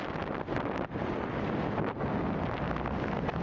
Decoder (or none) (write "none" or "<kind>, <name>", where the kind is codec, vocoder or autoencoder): none